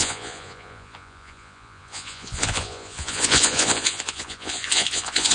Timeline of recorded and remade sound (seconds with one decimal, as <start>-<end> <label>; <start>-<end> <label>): 0.0-5.3 remade